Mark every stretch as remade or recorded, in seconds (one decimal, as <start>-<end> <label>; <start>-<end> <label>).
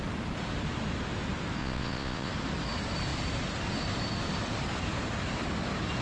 0.0-1.6 recorded; 1.6-2.3 remade; 2.3-6.0 recorded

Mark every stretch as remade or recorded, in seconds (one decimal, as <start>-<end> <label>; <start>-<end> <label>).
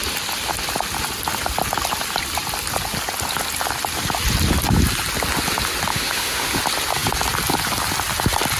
0.0-5.9 recorded; 5.9-6.6 remade; 6.6-8.6 recorded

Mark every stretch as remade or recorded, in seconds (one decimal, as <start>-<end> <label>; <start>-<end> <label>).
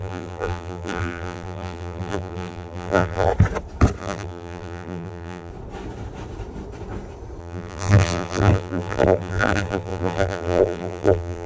0.0-3.3 remade; 3.3-4.0 recorded; 4.0-5.5 remade; 5.5-7.4 recorded; 7.4-11.5 remade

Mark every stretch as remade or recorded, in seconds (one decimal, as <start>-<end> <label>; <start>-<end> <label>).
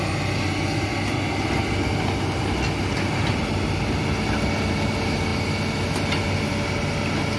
0.0-7.4 recorded